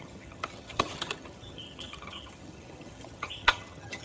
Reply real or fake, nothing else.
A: fake